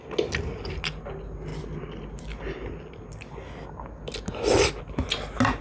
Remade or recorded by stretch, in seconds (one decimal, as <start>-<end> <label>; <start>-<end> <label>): 0.0-5.6 recorded